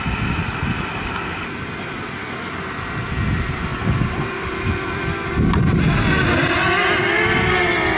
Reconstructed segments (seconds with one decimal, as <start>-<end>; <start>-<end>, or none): none